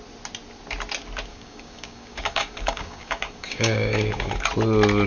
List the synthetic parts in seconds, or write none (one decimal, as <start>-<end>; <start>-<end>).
1.3-4.4